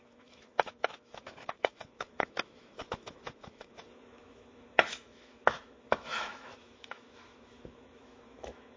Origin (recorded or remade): remade